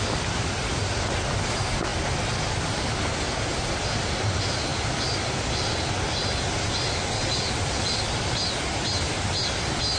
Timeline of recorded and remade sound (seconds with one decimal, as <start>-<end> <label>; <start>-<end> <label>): 0.0-10.0 recorded

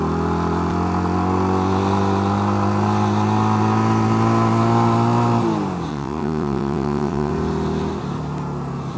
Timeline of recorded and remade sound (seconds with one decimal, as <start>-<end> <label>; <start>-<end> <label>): 0.0-5.9 recorded; 5.9-7.3 remade; 7.3-9.0 recorded

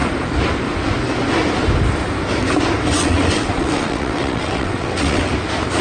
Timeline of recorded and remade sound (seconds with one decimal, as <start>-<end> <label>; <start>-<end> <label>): 0.0-2.9 recorded; 2.9-5.3 remade; 5.3-5.8 recorded

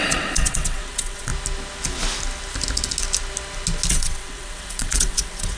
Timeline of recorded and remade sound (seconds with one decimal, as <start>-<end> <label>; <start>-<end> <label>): 0.0-1.3 remade; 1.3-3.9 recorded; 3.9-5.6 remade

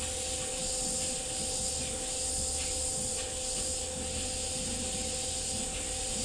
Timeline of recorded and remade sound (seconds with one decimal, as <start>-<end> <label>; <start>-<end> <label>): 0.0-6.2 recorded